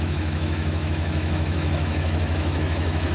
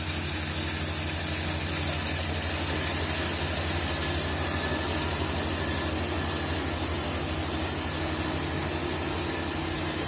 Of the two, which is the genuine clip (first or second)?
second